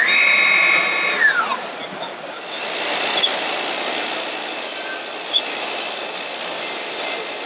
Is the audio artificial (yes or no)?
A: no